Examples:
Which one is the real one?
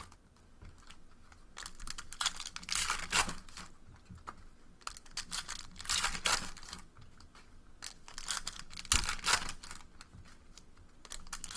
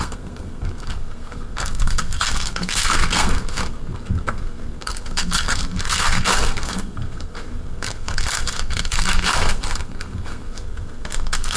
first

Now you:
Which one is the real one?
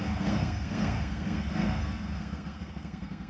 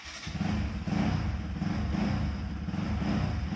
second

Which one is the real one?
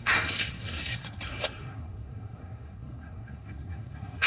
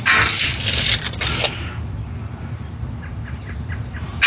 second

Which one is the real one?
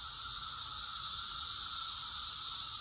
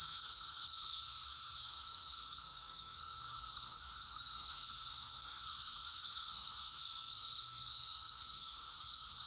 first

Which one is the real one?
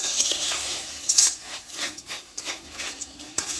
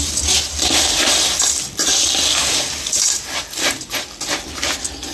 second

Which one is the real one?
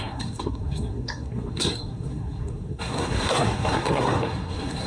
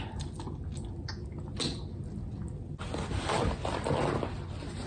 second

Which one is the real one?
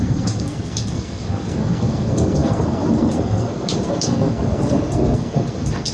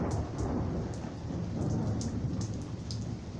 second